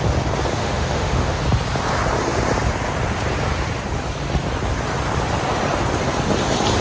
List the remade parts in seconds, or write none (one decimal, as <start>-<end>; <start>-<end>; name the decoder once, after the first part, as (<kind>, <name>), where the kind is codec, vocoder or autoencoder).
0.6-1.4 (autoencoder, DAC-VAE)